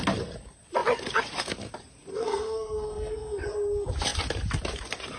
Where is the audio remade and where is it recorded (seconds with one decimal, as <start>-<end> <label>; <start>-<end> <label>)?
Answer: 0.0-2.1 recorded; 2.1-3.4 remade; 3.4-5.2 recorded